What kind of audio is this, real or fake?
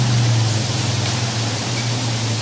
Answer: real